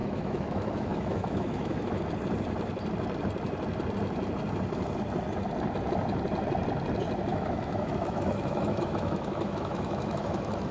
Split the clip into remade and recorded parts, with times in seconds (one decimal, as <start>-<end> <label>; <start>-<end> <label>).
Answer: 0.0-2.0 remade; 2.0-7.3 recorded; 7.3-10.7 remade